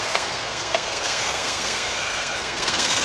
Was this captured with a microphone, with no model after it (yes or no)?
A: no